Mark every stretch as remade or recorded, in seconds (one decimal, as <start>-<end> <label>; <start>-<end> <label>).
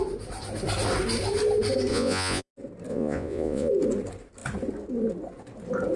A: 0.0-1.9 recorded; 1.9-2.5 remade; 2.5-2.9 recorded; 2.9-3.7 remade; 3.7-6.0 recorded